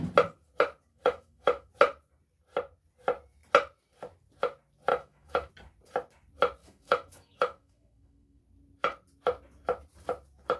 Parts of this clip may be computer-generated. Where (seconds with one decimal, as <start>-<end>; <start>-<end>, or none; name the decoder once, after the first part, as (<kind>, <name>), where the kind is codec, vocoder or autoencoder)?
0.9-1.7 (autoencoder, DAC-VAE); 4.9-5.5; 6.6-8.4